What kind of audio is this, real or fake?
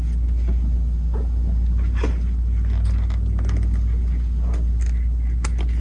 real